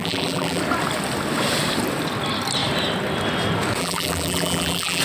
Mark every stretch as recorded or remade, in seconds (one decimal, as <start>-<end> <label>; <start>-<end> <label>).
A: 0.0-0.6 remade; 0.6-3.8 recorded; 3.8-5.0 remade